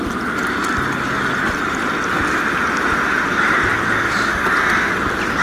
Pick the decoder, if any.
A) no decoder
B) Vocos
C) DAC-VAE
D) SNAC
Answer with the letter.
A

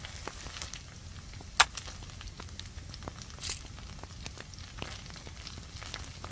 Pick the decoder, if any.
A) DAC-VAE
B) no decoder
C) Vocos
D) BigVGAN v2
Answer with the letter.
B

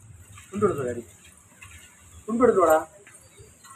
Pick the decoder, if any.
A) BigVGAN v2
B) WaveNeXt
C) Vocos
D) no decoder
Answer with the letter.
D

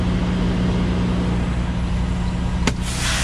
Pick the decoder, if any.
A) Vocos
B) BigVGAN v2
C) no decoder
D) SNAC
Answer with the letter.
C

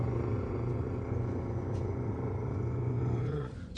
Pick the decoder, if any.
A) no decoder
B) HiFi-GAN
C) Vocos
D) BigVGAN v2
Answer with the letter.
C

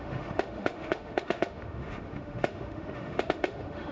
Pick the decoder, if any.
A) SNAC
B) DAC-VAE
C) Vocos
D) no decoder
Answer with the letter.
B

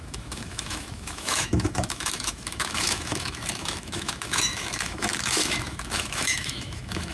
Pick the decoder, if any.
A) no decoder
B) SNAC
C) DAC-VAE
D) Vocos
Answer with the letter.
C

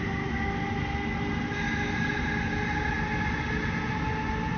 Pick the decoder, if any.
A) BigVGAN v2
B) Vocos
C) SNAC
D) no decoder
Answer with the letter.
D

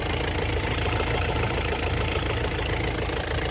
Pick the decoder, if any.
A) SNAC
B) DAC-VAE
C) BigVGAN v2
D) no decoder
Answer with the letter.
C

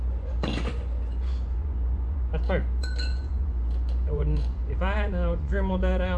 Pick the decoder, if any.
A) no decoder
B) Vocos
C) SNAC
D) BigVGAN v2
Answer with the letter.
B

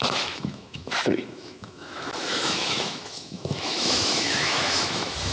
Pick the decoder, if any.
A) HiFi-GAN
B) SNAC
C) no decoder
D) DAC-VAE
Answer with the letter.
D